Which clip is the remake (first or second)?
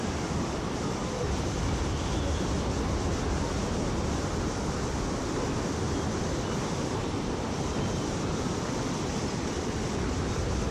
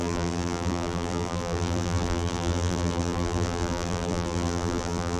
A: second